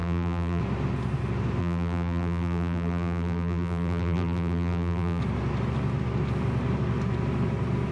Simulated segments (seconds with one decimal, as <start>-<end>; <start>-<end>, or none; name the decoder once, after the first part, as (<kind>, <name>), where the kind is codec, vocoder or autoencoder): 0.0-0.6 (vocoder, BigVGAN v2); 1.6-5.2